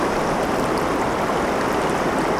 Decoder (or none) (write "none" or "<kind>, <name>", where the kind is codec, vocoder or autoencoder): none